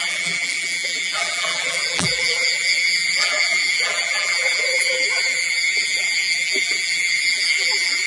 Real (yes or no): no